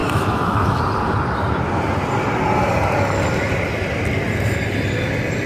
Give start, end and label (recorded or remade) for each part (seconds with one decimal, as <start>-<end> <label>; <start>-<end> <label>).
0.0-0.8 remade; 0.8-5.5 recorded